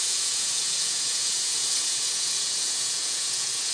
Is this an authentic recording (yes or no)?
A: no